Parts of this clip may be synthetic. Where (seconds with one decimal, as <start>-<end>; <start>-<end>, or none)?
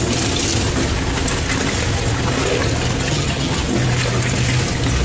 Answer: 3.0-3.6